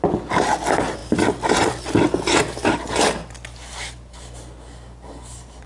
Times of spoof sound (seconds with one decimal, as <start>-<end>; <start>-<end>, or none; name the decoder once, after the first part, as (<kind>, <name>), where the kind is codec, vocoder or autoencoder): none